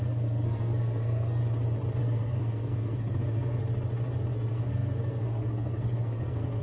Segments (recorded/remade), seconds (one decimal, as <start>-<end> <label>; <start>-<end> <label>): 0.0-1.4 remade; 1.4-2.0 recorded; 2.0-3.6 remade; 3.6-4.3 recorded; 4.3-6.6 remade